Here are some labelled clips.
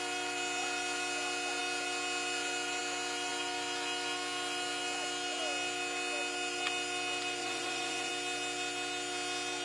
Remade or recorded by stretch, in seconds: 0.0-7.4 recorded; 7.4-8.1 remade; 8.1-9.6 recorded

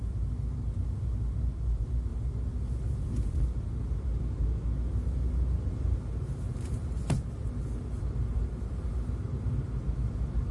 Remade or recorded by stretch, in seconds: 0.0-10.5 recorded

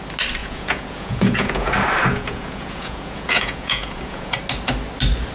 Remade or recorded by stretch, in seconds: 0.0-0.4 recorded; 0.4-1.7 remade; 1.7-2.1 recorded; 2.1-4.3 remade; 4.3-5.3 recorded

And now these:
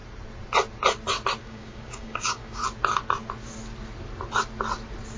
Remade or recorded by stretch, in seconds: 0.0-1.4 recorded; 1.4-2.6 remade; 2.6-5.2 recorded

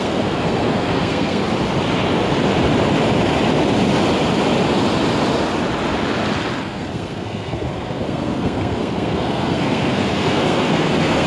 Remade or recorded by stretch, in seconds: 0.0-1.4 remade; 1.4-6.6 recorded; 6.6-11.3 remade